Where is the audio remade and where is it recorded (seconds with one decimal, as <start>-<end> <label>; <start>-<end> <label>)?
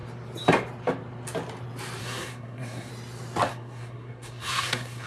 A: 0.0-2.0 recorded; 2.0-2.9 remade; 2.9-3.5 recorded; 3.5-5.1 remade